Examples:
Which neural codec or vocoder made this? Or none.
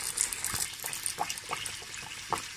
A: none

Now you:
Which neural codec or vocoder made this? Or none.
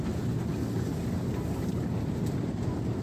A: none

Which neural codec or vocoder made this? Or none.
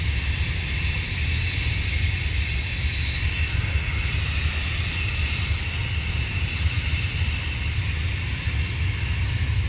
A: none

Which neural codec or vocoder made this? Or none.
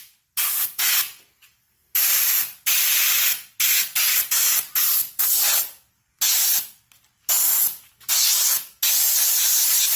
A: none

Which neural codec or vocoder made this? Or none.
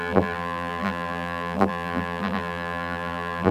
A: vocoder, BigVGAN v2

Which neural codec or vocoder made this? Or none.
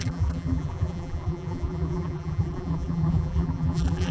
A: vocoder, BigVGAN v2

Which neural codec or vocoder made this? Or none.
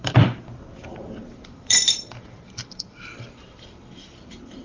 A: vocoder, BigVGAN v2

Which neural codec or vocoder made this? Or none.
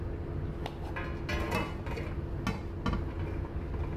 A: none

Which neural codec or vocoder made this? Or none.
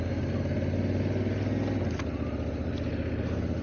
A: none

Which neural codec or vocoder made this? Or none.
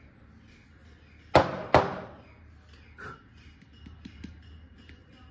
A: none